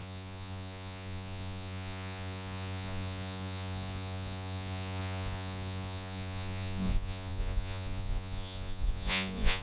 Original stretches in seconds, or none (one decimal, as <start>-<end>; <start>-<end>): none